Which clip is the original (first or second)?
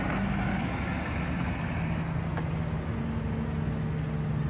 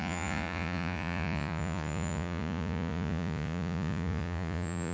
first